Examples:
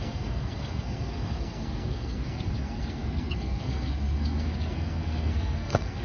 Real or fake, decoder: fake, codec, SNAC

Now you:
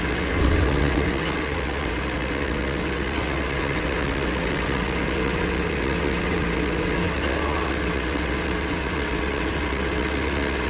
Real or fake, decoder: fake, vocoder, WaveNeXt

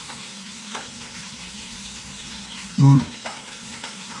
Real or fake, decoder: fake, codec, SNAC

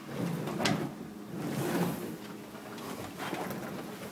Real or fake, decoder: real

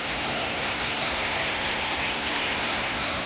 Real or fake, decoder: fake, codec, SNAC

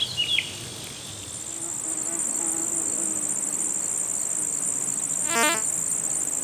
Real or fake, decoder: real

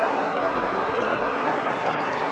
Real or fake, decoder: fake, codec, SNAC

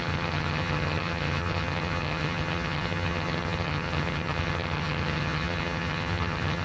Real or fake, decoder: fake, vocoder, HiFi-GAN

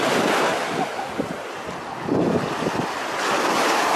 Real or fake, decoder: real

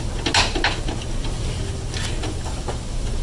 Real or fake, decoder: real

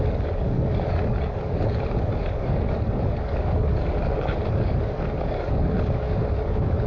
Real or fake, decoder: fake, codec, DAC